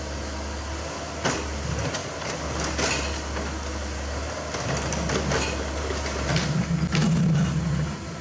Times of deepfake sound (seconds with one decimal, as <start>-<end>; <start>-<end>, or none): none